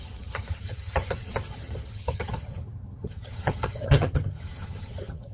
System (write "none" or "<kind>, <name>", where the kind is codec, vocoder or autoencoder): vocoder, HiFi-GAN